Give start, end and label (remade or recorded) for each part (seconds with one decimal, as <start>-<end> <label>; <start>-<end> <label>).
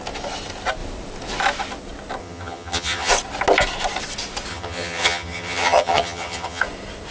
0.0-2.2 recorded; 2.2-3.1 remade; 3.1-4.5 recorded; 4.5-6.6 remade; 6.6-7.1 recorded